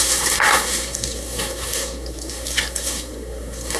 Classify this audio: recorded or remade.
remade